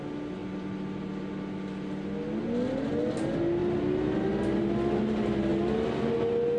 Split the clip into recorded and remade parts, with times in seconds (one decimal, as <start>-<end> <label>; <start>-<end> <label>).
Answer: 0.0-6.6 recorded